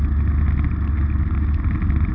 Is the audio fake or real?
real